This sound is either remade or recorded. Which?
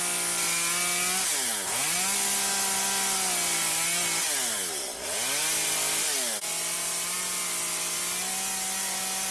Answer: recorded